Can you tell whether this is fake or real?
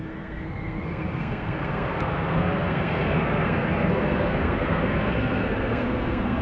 fake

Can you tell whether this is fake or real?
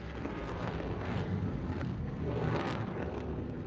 fake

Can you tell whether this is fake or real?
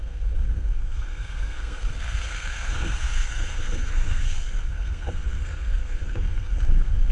fake